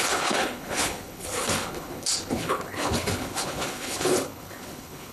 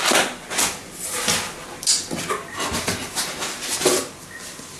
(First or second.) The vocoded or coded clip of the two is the first